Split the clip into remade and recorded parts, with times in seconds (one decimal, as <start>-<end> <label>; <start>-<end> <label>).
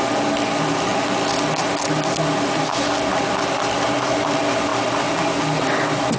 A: 0.0-6.2 recorded